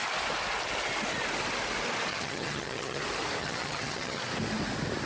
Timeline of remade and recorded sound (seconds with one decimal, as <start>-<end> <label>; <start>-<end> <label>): 0.0-2.1 recorded; 2.1-3.0 remade; 3.0-3.4 recorded; 3.4-4.2 remade; 4.2-5.1 recorded